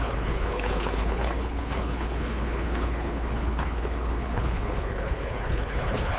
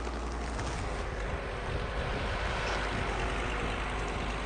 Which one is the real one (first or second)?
second